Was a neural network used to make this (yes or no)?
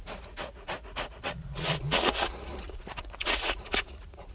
yes